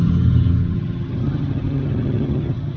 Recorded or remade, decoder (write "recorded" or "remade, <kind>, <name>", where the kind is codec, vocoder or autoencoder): remade, vocoder, HiFi-GAN